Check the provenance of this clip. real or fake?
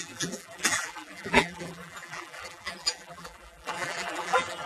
fake